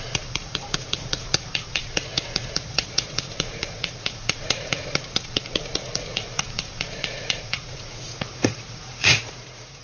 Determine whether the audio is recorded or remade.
remade